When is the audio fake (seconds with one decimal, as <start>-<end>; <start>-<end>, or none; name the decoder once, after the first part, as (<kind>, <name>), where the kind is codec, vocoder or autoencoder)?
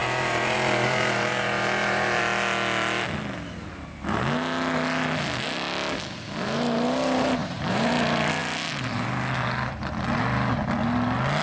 0.0-2.2 (vocoder, BigVGAN v2); 7.4-7.9